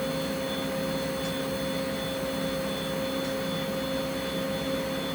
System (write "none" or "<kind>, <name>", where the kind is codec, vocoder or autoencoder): none